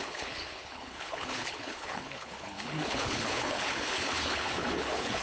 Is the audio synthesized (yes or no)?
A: yes